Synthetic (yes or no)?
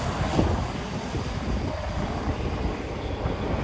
no